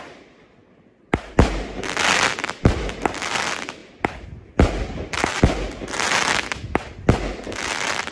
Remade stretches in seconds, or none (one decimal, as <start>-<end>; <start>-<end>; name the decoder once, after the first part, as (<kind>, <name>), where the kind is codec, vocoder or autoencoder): none